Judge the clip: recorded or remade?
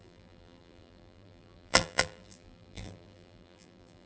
remade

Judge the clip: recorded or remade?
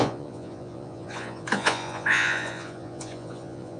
remade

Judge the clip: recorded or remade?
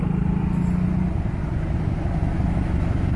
recorded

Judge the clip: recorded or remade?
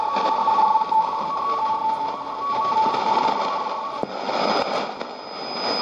recorded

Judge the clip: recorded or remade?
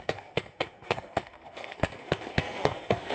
remade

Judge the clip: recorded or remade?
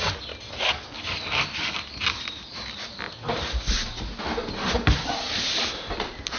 recorded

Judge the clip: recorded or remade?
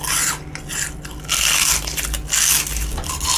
recorded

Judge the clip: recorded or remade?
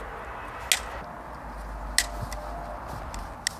recorded